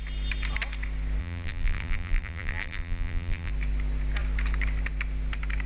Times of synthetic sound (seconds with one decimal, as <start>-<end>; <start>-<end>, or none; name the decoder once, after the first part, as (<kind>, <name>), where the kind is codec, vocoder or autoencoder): 1.2-3.5 (vocoder, BigVGAN v2)

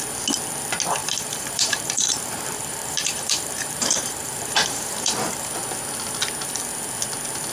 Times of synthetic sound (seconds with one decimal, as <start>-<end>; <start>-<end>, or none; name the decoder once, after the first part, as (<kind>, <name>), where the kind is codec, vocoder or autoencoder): 1.0-5.5 (vocoder, BigVGAN v2)

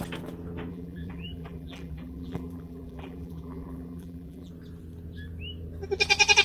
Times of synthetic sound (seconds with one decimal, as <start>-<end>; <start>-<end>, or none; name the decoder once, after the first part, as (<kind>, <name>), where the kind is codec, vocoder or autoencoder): 0.7-4.5 (vocoder, BigVGAN v2)

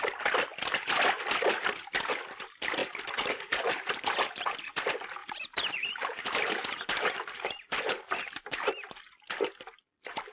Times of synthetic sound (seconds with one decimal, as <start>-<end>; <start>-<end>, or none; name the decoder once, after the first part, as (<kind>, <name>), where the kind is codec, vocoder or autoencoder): 2.8-4.8 (vocoder, BigVGAN v2); 5.2-8.4

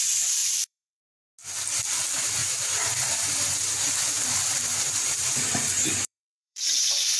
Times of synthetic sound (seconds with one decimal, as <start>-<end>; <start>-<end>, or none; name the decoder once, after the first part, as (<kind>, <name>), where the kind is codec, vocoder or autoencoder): 0.4-1.0 (vocoder, BigVGAN v2); 2.4-6.7

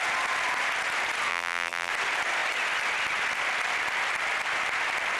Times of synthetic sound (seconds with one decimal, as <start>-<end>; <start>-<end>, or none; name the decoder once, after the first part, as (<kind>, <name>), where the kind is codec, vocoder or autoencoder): 1.3-1.9 (vocoder, BigVGAN v2)

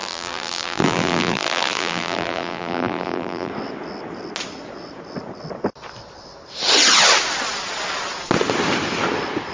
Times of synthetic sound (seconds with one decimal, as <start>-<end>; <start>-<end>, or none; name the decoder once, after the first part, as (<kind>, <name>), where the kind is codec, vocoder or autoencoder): 0.0-3.5 (vocoder, BigVGAN v2)

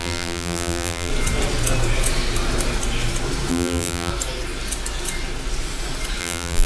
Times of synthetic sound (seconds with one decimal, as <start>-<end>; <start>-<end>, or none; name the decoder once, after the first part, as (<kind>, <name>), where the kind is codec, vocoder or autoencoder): 0.0-1.1 (vocoder, BigVGAN v2); 3.5-4.1; 6.2-6.7